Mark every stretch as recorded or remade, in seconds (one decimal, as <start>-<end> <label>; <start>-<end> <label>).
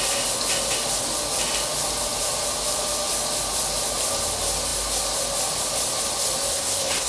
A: 0.0-6.5 recorded; 6.5-7.1 remade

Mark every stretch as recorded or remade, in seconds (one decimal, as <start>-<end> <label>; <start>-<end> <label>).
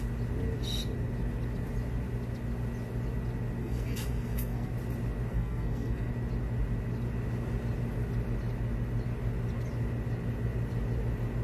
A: 0.0-3.6 recorded; 3.6-4.7 remade; 4.7-5.3 recorded; 5.3-6.1 remade; 6.1-11.4 recorded